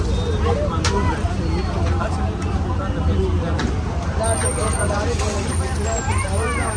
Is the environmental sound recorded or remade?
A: recorded